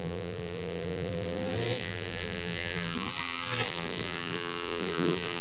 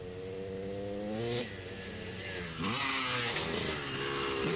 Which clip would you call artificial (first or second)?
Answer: first